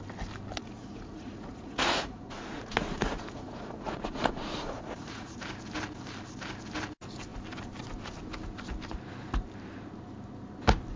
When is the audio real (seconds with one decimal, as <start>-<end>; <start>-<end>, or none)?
0.0-0.6; 5.4-11.0